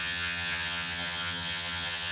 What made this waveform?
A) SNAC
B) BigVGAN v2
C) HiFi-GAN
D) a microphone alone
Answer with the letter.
C